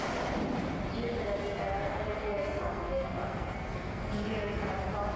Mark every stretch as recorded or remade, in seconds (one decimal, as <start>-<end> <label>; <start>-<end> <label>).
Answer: 0.0-1.6 recorded; 1.6-4.7 remade; 4.7-5.2 recorded